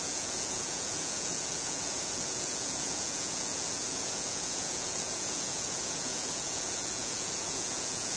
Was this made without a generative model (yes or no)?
no